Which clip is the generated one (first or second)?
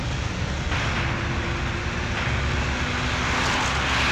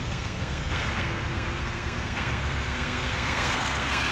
second